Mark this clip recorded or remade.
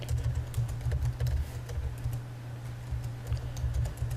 recorded